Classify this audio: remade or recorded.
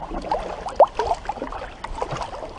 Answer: recorded